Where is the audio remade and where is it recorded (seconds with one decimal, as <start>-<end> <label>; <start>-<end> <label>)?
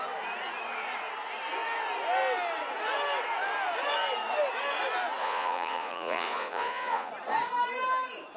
0.0-5.2 recorded; 5.2-7.1 remade; 7.1-8.4 recorded